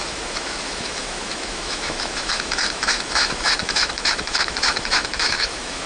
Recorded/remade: remade